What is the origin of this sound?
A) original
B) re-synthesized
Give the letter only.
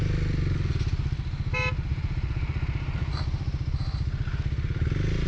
A